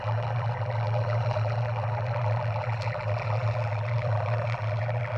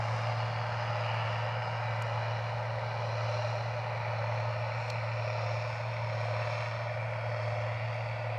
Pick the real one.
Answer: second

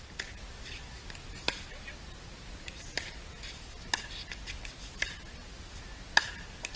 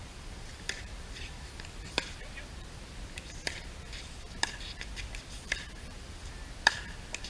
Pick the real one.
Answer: first